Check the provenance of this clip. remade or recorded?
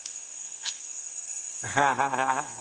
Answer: remade